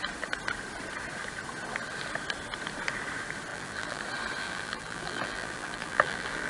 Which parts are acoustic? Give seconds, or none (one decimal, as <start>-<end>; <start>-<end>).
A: 0.0-3.5; 4.0-4.4